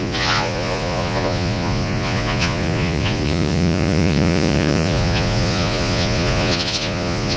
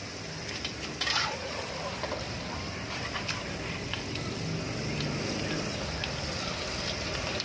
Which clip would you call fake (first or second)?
first